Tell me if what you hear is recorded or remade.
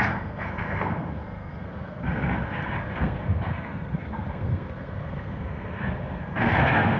remade